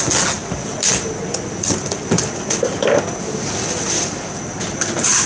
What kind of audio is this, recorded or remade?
recorded